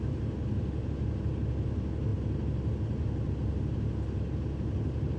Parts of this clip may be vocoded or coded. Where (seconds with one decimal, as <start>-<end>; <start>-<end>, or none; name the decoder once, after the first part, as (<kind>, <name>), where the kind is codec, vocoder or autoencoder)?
none

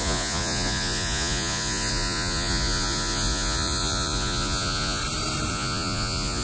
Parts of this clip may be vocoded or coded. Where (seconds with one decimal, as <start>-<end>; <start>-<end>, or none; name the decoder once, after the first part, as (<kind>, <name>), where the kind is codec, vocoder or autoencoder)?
0.0-5.0 (vocoder, Vocos); 5.5-6.4

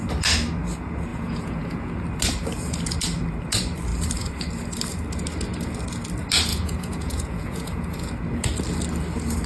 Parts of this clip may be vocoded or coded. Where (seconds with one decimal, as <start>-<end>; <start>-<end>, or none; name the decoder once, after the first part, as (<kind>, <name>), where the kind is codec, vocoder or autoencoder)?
1.1-1.9 (vocoder, Vocos); 6.5-8.1